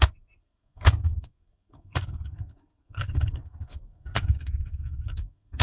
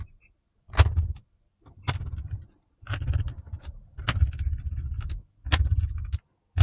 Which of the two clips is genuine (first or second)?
second